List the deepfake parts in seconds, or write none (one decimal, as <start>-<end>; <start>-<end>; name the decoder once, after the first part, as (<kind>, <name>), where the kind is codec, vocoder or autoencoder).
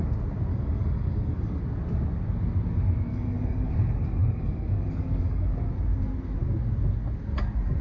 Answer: 0.5-1.6 (codec, DAC); 3.1-3.7; 4.2-5.7